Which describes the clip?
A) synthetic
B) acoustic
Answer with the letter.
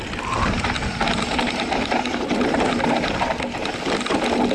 B